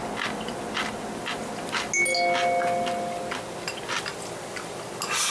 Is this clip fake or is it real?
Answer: real